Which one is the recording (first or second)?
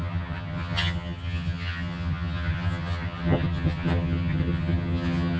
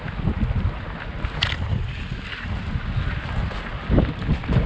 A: second